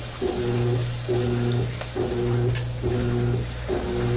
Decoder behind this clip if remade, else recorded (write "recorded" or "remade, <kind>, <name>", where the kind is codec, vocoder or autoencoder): recorded